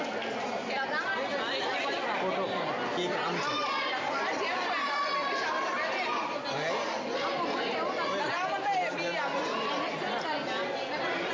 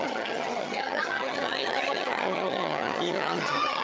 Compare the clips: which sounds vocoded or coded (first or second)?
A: second